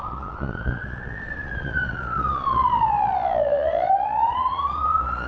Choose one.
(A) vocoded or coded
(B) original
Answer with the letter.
A